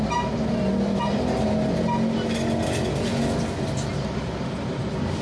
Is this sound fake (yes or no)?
no